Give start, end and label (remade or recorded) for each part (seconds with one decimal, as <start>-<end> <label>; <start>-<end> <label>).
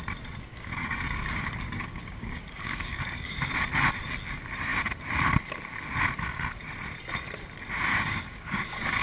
0.0-0.5 recorded; 0.5-3.5 remade; 3.5-7.9 recorded; 7.9-9.0 remade